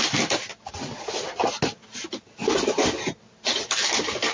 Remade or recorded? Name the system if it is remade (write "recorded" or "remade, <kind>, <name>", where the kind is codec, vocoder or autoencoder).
recorded